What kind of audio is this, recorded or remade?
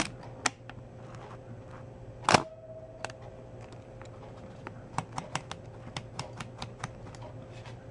recorded